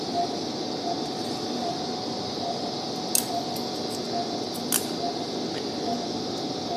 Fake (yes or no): no